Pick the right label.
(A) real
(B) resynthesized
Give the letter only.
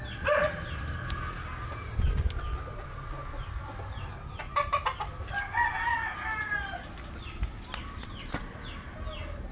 A